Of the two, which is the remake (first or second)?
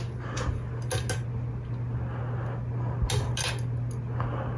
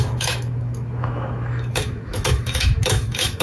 second